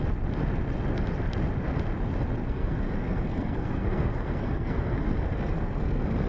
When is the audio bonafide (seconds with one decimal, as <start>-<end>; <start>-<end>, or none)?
0.0-2.4